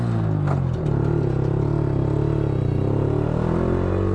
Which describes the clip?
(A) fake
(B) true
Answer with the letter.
B